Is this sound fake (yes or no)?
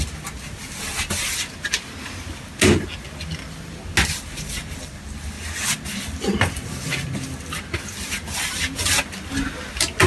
no